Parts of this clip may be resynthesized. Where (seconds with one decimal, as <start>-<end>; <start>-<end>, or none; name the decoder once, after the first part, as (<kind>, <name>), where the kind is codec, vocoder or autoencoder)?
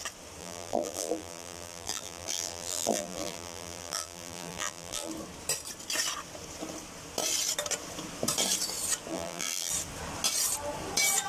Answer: 0.4-5.1 (vocoder, BigVGAN v2); 9.1-9.7